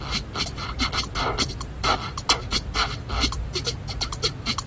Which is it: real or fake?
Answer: real